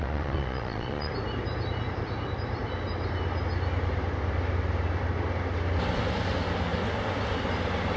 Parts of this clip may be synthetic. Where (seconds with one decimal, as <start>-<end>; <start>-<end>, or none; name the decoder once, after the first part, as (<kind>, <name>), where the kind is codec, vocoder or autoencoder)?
0.0-1.1 (vocoder, Vocos)

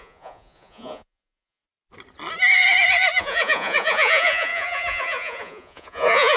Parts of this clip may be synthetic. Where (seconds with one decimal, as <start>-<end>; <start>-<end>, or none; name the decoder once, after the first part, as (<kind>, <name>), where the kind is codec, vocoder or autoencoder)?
0.0-1.6 (vocoder, Vocos); 3.2-6.4

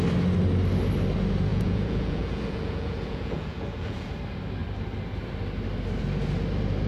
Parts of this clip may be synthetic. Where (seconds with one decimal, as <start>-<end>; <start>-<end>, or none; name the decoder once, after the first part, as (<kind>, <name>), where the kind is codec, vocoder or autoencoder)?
1.5-4.1 (vocoder, Vocos)